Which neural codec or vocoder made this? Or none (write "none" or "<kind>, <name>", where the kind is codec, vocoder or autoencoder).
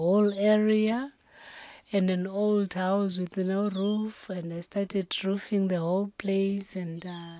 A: none